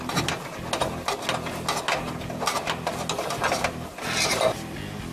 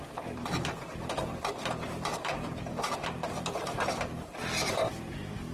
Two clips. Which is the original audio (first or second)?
first